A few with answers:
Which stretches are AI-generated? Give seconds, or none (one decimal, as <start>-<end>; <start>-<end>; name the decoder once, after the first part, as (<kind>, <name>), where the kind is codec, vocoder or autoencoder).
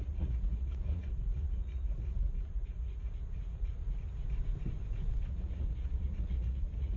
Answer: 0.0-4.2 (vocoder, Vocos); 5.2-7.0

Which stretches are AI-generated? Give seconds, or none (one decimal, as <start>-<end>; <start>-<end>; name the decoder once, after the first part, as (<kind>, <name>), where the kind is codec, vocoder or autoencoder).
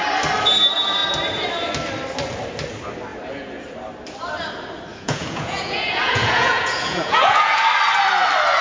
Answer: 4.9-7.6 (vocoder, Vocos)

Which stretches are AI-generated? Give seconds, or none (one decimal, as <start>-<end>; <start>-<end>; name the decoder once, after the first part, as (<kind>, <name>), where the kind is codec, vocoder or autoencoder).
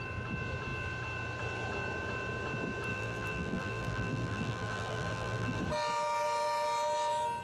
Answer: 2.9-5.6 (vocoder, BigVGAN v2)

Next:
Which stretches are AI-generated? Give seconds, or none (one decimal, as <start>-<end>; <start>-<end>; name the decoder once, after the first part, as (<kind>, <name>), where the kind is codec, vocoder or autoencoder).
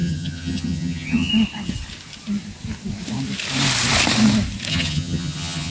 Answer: 0.0-1.3 (vocoder, HiFi-GAN); 4.7-5.7